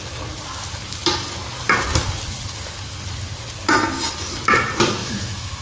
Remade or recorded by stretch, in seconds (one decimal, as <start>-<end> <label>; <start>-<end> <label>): 0.0-5.0 recorded; 5.0-5.6 remade